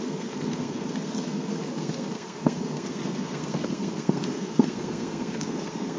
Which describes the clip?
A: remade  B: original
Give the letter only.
A